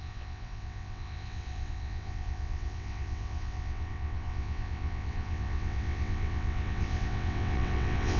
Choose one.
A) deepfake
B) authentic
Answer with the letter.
A